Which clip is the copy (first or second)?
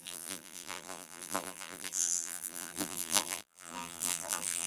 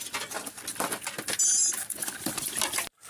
first